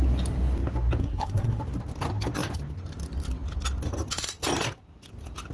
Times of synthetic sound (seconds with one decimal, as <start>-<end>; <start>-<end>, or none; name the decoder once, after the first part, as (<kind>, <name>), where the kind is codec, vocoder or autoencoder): 1.0-1.6 (codec, SNAC)